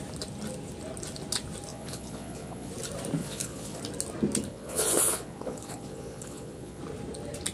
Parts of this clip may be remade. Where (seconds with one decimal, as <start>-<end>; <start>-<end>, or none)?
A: 1.7-2.7; 3.2-3.8; 4.5-6.8